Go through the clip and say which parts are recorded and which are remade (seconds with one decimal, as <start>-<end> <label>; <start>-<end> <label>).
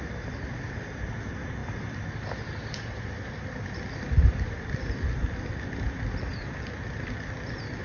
0.0-7.8 recorded